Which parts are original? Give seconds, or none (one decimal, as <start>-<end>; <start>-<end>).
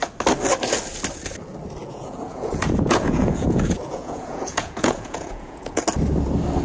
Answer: 0.0-1.8; 5.8-6.6